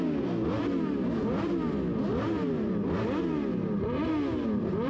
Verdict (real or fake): real